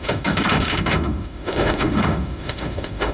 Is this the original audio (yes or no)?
no